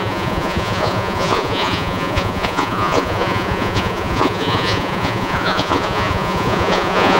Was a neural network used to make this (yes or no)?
yes